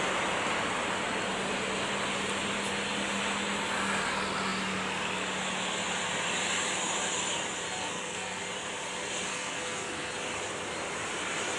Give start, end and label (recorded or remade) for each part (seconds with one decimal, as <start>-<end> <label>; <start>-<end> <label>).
0.0-7.8 recorded; 7.8-8.4 remade; 8.4-9.3 recorded; 9.3-10.1 remade; 10.1-11.6 recorded

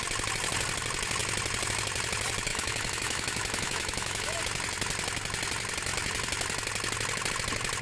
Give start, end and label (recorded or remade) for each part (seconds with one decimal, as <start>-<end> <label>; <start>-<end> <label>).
0.0-2.5 recorded; 2.5-4.4 remade; 4.4-7.8 recorded

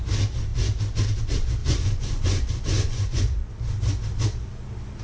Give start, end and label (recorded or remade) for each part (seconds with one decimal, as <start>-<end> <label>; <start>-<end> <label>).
0.0-1.6 recorded; 1.6-3.5 remade; 3.5-5.0 recorded

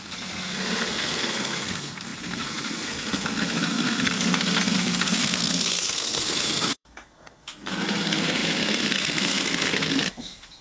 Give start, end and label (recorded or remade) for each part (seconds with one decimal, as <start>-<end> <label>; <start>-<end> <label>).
0.0-10.6 remade

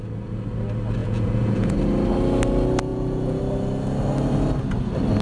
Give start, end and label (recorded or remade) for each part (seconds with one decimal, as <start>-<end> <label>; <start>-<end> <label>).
0.0-1.0 recorded; 1.0-1.7 remade; 1.7-2.9 recorded; 2.9-3.4 remade; 3.4-5.2 recorded

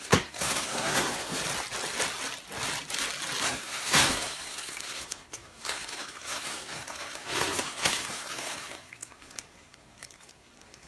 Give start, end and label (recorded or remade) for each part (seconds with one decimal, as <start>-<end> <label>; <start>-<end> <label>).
0.0-1.4 remade; 1.4-3.4 recorded; 3.4-10.9 remade